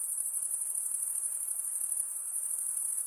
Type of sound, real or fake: fake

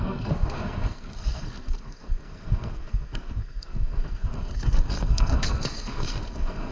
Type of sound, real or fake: fake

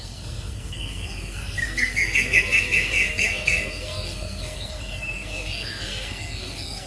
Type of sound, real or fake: fake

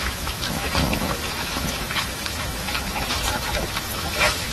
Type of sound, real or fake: fake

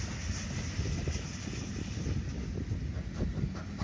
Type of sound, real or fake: real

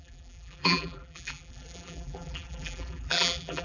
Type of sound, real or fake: fake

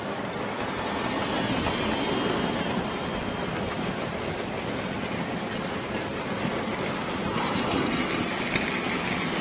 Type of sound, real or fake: real